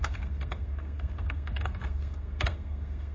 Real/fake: fake